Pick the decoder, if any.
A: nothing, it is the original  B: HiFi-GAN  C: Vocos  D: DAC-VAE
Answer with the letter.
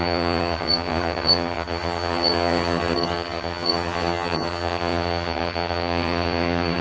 B